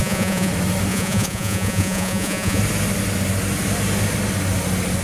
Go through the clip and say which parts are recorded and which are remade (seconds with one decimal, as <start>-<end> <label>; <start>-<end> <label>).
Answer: 0.0-0.5 remade; 0.5-0.9 recorded; 0.9-2.6 remade; 2.6-5.0 recorded